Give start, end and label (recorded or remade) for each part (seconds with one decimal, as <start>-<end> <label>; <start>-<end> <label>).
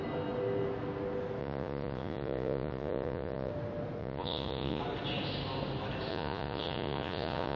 0.0-1.4 recorded; 1.4-3.5 remade; 3.5-4.0 recorded; 4.0-4.8 remade; 4.8-6.1 recorded; 6.1-7.6 remade